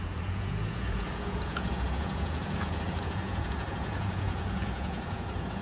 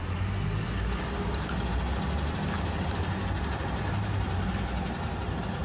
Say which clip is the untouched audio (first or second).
second